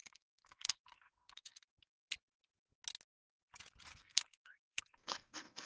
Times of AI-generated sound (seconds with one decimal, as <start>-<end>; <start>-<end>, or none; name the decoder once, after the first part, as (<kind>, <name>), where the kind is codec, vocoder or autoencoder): 0.0-2.1 (codec, SNAC); 3.9-5.7